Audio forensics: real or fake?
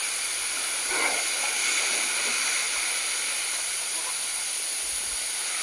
real